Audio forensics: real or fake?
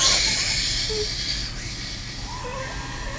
real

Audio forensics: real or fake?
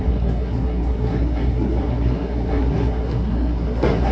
fake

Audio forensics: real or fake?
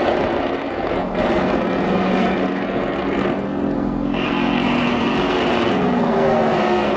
fake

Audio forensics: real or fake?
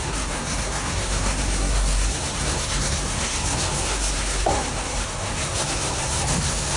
fake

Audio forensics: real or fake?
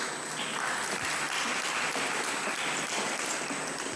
real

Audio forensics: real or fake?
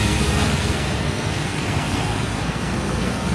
fake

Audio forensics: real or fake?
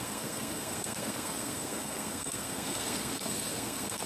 fake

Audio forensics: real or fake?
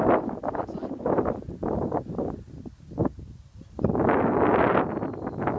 real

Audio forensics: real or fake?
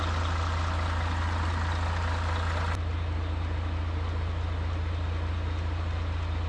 real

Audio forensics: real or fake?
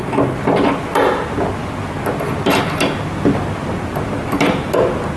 real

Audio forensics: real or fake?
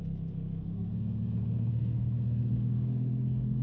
fake